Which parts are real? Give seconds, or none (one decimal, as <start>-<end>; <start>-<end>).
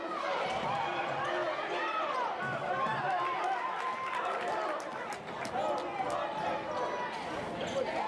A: 0.0-8.1